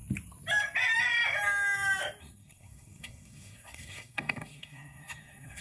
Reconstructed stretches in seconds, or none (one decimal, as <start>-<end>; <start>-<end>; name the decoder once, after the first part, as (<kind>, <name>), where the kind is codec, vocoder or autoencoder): 2.2-5.6 (codec, SNAC)

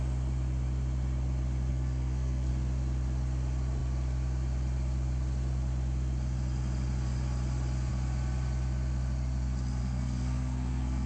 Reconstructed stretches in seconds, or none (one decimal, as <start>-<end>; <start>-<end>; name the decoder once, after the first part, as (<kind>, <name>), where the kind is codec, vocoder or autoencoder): 1.7-2.5 (codec, SNAC); 9.8-11.1

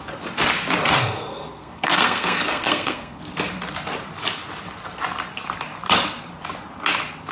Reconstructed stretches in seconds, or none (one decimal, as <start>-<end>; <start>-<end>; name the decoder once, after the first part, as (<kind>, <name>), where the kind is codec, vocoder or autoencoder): 1.0-3.2 (codec, SNAC)

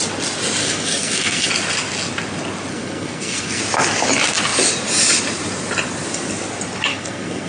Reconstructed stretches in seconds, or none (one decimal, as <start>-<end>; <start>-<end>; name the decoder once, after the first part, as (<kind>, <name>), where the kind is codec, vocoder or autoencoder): 0.6-1.5 (codec, SNAC); 2.7-3.6; 6.9-7.5

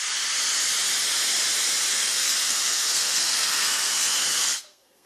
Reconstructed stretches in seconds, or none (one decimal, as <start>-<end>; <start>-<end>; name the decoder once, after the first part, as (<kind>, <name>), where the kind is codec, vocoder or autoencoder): 1.9-5.1 (codec, SNAC)